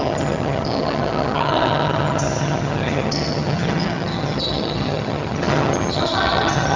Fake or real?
fake